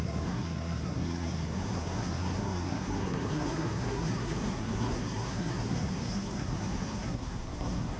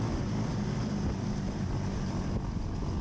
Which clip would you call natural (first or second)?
second